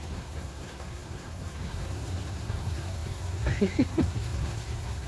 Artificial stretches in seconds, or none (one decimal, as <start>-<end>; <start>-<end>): 0.0-5.1